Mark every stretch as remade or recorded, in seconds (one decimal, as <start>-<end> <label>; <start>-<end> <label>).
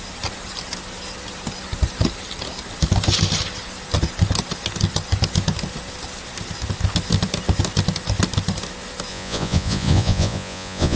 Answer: 0.0-9.1 recorded; 9.1-11.0 remade